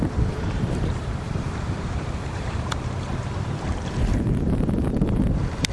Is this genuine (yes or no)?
no